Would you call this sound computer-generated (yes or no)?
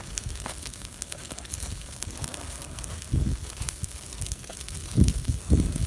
yes